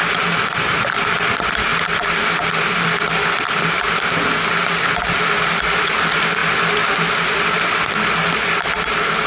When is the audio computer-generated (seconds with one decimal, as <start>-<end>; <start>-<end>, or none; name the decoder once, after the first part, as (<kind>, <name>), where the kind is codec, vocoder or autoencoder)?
none